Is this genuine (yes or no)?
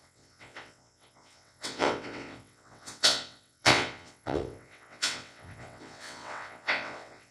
no